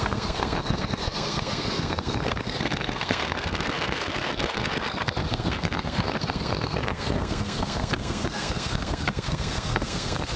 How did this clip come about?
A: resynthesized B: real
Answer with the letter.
A